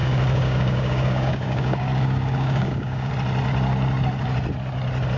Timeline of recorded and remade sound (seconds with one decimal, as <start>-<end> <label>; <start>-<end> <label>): 0.0-3.1 remade; 3.1-5.2 recorded